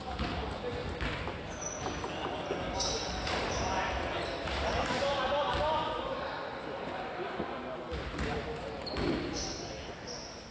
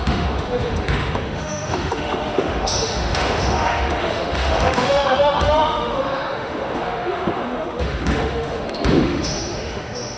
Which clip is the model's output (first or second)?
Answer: second